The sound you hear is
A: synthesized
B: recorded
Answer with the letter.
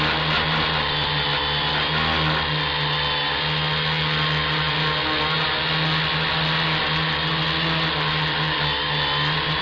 B